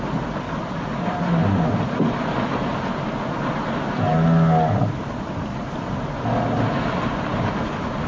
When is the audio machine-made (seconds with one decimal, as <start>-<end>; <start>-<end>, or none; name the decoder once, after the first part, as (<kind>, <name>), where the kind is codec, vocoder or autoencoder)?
none

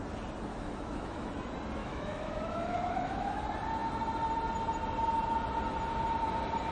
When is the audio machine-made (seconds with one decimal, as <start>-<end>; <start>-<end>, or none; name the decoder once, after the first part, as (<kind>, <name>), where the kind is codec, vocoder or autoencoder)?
0.5-1.3 (autoencoder, DAC-VAE); 1.8-3.4

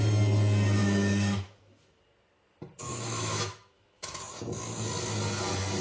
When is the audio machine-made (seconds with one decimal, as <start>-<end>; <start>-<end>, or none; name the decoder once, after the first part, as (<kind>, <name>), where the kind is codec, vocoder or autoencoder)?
0.8-2.0 (autoencoder, DAC-VAE); 2.9-4.2

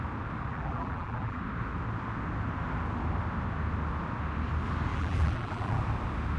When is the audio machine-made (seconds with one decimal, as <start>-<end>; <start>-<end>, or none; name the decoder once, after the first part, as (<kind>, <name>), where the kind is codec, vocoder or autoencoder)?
0.5-1.4 (vocoder, BigVGAN v2); 4.9-5.8

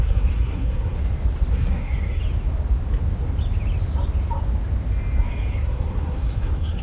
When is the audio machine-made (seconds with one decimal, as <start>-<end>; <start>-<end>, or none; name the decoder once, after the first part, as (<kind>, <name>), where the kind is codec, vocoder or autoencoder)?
0.0-1.0 (codec, SNAC); 1.5-2.2; 5.5-6.8

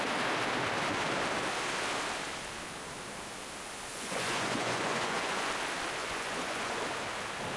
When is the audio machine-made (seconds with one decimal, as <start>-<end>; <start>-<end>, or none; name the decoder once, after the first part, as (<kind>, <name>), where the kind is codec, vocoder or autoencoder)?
3.9-5.5 (vocoder, Vocos); 6.0-6.8

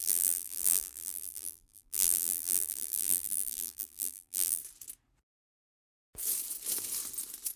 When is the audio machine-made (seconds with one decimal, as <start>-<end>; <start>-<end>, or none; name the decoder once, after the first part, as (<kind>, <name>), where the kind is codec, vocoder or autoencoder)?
0.0-4.6 (vocoder, BigVGAN v2)